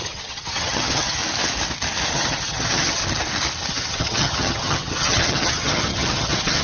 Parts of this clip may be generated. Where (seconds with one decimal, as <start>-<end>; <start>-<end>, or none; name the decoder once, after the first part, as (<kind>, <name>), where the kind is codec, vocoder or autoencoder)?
0.0-1.2 (vocoder, HiFi-GAN); 2.1-3.0; 3.7-6.6